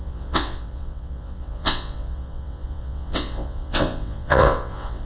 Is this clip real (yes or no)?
no